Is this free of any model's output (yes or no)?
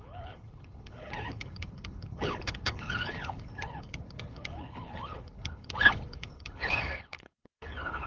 no